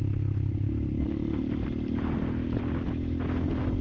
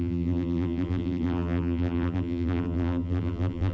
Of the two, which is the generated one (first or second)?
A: second